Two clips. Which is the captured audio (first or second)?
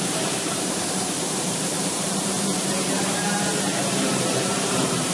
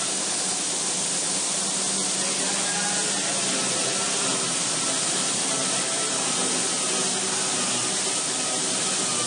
second